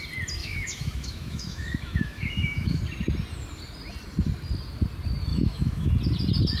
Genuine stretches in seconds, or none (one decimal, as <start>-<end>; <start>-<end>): 0.0-0.4; 2.8-5.3; 5.9-6.6